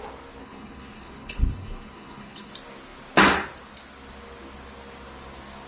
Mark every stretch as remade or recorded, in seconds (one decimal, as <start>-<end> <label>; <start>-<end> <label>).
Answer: 0.0-0.4 recorded; 0.4-2.5 remade; 2.5-5.7 recorded